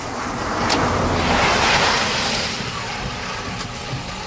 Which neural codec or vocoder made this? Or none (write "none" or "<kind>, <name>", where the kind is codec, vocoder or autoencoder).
none